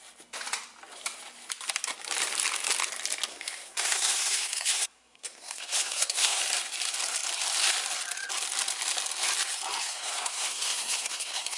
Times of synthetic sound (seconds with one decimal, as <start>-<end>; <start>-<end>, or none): 3.3-6.4; 9.8-11.6